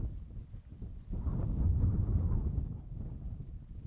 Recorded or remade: recorded